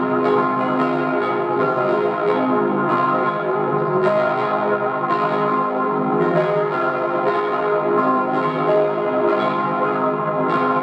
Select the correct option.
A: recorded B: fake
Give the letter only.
B